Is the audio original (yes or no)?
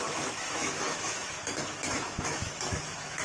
no